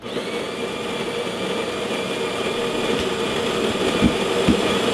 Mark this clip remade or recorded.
recorded